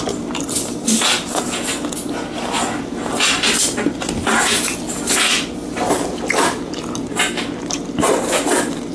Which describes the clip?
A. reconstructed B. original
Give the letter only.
B